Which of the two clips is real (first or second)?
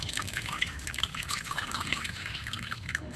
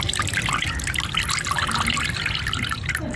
second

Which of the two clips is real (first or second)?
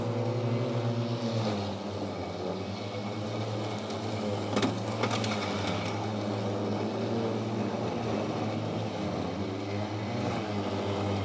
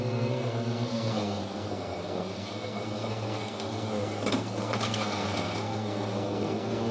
first